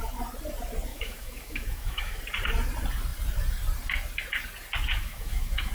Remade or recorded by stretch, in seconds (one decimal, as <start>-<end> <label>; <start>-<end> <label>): 0.0-0.9 recorded; 0.9-2.2 remade; 2.2-4.9 recorded; 4.9-5.7 remade